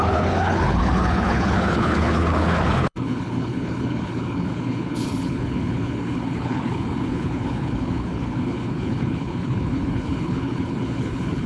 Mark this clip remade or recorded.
remade